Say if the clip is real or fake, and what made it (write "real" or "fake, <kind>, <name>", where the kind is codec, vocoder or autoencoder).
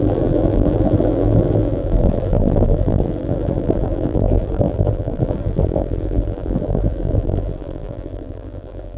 fake, vocoder, BigVGAN v2